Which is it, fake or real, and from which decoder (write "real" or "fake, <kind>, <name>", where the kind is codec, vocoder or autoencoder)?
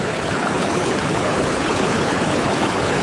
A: fake, codec, HILCodec